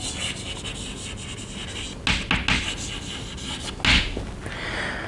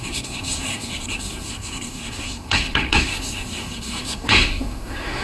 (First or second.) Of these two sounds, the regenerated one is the second